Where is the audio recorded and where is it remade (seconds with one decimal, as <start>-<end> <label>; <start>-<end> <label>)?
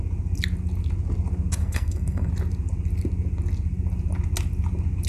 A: 0.0-1.6 recorded; 1.6-2.3 remade; 2.3-5.1 recorded